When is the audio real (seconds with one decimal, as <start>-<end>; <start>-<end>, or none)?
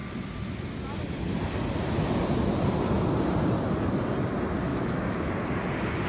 0.0-4.7; 5.3-6.1